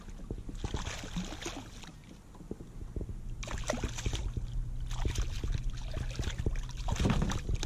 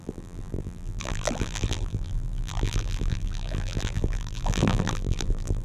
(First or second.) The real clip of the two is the first